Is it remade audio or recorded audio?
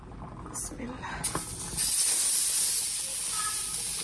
recorded